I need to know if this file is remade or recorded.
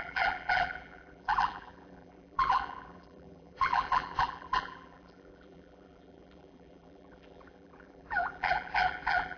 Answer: remade